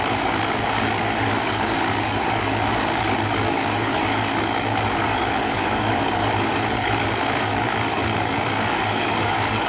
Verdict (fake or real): fake